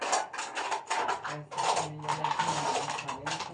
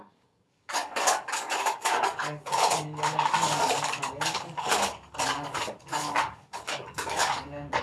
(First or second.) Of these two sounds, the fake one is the second